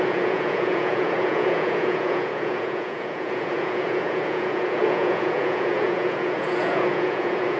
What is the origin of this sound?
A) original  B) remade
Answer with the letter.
B